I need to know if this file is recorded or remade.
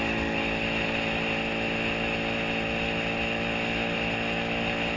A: recorded